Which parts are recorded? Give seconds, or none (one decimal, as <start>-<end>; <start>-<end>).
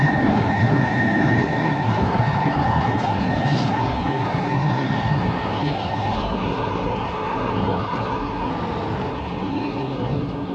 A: 8.5-9.1